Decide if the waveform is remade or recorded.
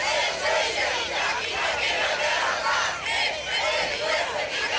recorded